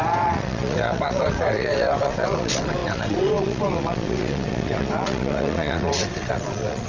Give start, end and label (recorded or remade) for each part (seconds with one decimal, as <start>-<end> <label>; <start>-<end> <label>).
0.0-6.9 remade